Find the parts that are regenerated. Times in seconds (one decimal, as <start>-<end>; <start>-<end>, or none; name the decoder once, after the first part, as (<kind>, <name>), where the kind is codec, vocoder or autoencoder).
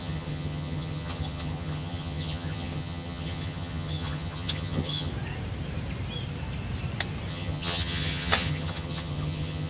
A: 0.0-5.1 (vocoder, HiFi-GAN); 7.3-9.7